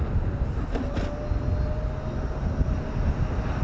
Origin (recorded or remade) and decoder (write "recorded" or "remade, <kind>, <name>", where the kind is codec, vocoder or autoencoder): recorded